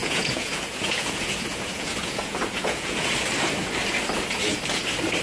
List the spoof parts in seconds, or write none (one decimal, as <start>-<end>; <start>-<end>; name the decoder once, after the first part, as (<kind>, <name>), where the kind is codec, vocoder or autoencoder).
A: 0.0-3.1 (vocoder, Vocos)